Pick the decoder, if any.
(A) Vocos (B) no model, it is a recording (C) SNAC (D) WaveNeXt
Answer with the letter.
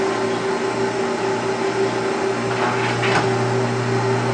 B